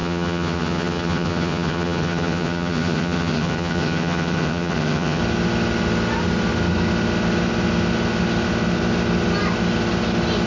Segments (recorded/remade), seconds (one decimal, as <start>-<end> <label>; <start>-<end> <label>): 0.0-5.2 remade; 5.2-10.5 recorded